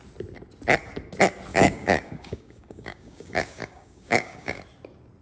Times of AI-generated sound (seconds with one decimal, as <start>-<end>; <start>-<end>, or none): 1.5-4.6

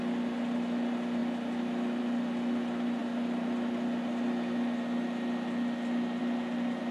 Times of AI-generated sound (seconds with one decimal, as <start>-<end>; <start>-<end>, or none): none